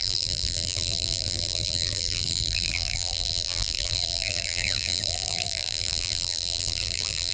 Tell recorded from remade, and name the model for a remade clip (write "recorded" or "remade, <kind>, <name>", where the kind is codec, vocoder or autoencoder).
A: remade, vocoder, BigVGAN v2